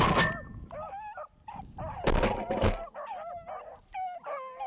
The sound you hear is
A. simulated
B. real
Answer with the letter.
B